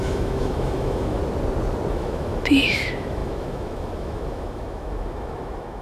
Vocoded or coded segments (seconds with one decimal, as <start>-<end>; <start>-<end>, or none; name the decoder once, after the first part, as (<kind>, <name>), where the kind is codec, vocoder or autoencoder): 0.0-1.2 (autoencoder, DAC-VAE); 1.9-5.8